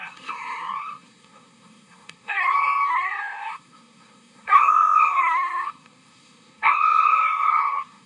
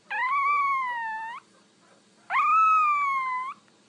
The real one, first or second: second